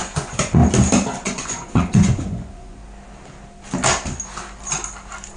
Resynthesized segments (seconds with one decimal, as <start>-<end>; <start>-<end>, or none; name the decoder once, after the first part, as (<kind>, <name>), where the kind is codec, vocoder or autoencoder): 0.0-0.6 (vocoder, Vocos); 1.2-2.8